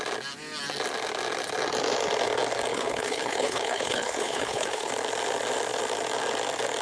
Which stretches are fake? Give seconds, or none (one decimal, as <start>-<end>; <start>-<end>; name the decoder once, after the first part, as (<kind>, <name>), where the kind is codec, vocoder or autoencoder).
2.7-4.9 (codec, HILCodec)